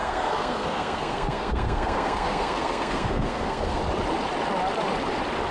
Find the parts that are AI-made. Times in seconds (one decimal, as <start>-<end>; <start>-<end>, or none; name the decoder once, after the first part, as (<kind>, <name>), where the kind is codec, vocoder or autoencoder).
0.0-3.8 (codec, SNAC)